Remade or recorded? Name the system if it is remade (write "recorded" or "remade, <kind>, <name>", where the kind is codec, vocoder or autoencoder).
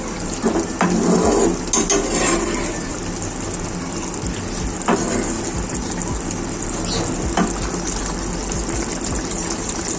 recorded